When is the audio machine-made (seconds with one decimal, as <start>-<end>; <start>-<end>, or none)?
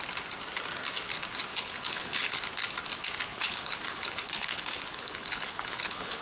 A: 1.5-2.4; 3.3-6.2